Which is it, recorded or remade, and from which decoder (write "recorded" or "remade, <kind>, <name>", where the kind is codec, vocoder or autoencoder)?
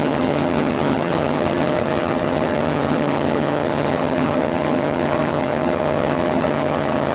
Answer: remade, vocoder, HiFi-GAN